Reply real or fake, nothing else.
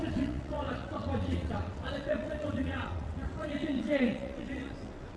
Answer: fake